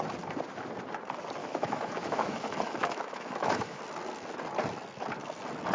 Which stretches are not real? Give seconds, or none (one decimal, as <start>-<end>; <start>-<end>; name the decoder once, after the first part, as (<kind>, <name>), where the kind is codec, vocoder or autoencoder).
1.4-3.8 (autoencoder, DAC-VAE)